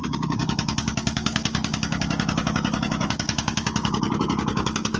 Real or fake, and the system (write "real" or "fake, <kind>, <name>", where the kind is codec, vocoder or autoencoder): fake, codec, DAC